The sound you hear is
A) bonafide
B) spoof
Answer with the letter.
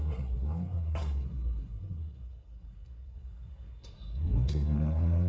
B